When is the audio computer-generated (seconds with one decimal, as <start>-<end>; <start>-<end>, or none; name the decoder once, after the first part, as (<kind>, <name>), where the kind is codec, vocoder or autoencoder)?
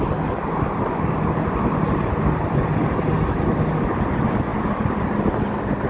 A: none